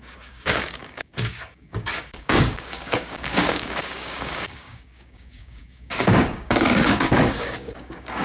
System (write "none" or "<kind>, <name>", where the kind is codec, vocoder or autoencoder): codec, DAC